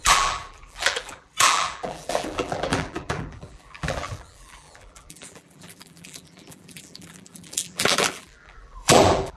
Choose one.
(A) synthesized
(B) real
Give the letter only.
A